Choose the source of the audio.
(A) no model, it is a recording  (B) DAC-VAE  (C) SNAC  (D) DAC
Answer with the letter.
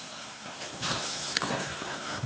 C